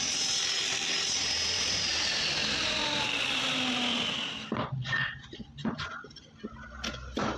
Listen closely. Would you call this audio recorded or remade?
recorded